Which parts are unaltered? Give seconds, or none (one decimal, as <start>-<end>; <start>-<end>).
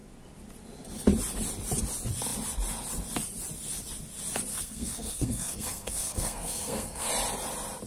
0.0-4.5; 7.1-7.9